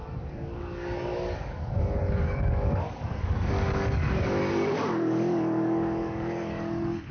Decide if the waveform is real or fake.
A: fake